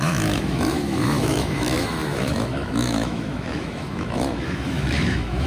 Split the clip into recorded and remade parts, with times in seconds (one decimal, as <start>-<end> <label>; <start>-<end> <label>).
0.0-5.5 remade